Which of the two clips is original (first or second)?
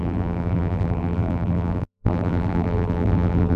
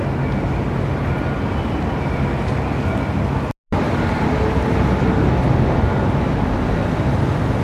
second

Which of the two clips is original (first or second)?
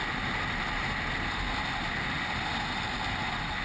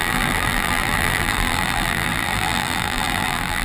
first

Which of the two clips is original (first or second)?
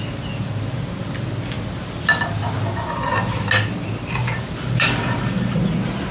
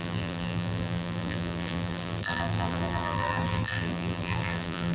first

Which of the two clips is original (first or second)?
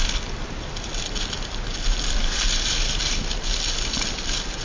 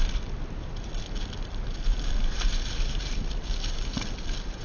first